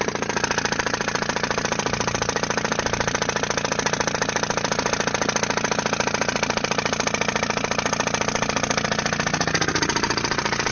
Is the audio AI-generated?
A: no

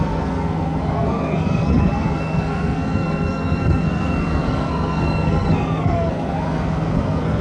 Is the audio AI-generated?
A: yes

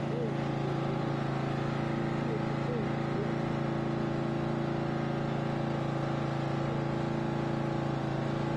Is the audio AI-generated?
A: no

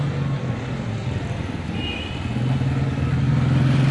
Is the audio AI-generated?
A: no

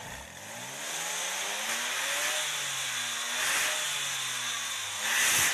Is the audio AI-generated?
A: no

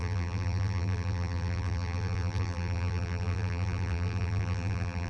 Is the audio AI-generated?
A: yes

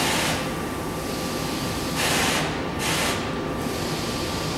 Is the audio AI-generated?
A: no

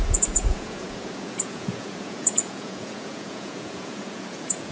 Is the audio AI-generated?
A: yes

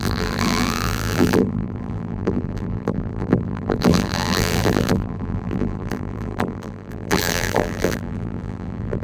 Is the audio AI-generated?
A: yes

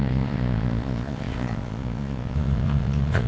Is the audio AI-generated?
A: yes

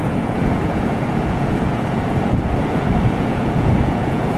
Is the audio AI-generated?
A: yes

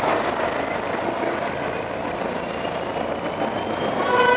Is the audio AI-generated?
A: no